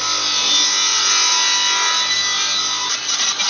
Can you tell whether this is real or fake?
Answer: real